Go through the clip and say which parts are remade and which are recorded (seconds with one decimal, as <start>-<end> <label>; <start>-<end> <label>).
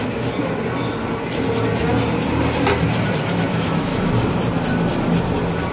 0.0-3.4 recorded; 3.4-3.9 remade; 3.9-5.7 recorded